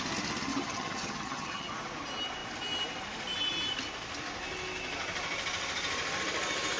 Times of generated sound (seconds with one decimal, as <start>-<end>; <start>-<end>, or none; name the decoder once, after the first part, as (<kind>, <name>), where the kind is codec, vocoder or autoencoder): 0.5-1.7 (vocoder, HiFi-GAN)